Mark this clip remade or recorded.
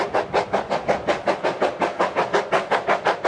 recorded